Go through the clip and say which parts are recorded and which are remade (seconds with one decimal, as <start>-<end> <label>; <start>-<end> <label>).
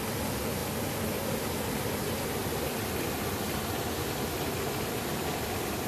0.0-5.9 recorded